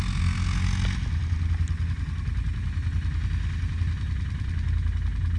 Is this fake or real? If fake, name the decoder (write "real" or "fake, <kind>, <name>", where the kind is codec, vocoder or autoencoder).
real